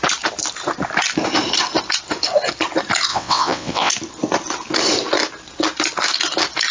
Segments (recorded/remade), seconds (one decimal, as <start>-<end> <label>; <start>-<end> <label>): 0.0-3.1 recorded; 3.1-3.9 remade; 3.9-6.7 recorded